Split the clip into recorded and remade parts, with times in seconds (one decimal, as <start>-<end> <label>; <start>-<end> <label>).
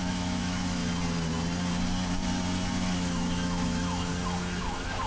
0.0-0.8 remade; 0.8-3.0 recorded; 3.0-4.1 remade; 4.1-4.6 recorded; 4.6-5.1 remade